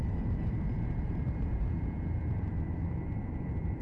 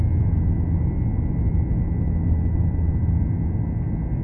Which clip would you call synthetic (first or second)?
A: first